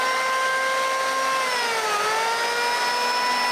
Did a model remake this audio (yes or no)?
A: no